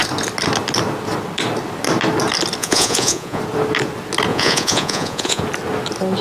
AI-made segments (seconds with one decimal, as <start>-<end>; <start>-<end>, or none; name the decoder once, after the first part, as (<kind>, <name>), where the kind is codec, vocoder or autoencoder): 2.6-3.4 (vocoder, Vocos); 4.3-5.4

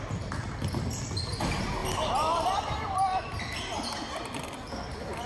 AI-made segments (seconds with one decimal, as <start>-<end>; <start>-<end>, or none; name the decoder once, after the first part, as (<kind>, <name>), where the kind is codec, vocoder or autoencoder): 1.8-3.4 (vocoder, BigVGAN v2)

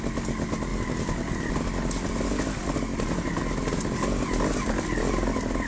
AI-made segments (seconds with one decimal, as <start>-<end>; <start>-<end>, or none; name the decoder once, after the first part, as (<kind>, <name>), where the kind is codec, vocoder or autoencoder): 0.7-1.5 (vocoder, BigVGAN v2)

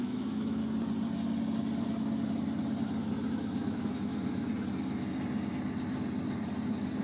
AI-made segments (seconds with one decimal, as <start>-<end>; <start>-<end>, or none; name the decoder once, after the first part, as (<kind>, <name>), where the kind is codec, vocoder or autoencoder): 0.0-0.6 (autoencoder, DAC-VAE); 3.3-4.5

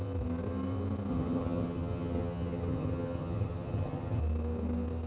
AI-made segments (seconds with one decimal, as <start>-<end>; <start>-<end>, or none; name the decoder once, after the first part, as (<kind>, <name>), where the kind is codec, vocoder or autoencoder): 1.1-4.2 (vocoder, HiFi-GAN)

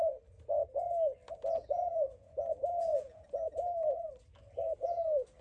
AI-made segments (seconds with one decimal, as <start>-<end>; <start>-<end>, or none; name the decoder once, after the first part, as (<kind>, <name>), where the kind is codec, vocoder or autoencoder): 1.6-4.1 (vocoder, Vocos)

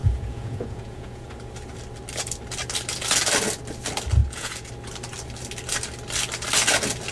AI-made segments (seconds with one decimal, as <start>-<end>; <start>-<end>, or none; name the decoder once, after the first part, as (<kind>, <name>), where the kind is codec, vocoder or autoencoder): 0.0-1.3 (vocoder, Vocos); 4.2-4.7

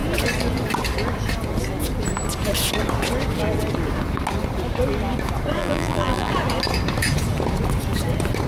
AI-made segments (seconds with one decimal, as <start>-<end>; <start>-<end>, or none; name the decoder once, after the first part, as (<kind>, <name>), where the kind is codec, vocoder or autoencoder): 5.6-6.3 (vocoder, BigVGAN v2)